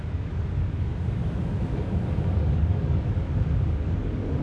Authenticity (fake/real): fake